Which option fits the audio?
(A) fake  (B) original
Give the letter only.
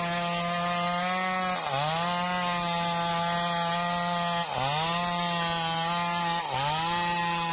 B